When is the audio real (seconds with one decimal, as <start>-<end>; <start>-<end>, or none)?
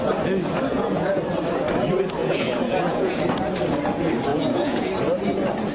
0.0-0.7; 1.2-2.2; 3.2-4.3; 4.9-5.7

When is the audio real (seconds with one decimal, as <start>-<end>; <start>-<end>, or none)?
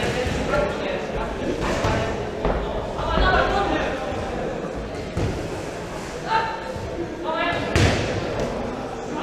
0.0-9.2